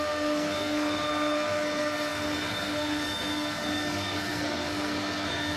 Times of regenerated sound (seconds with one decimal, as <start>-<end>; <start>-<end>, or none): 0.0-5.6